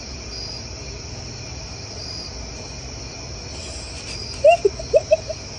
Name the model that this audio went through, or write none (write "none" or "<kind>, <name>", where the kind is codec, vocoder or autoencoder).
none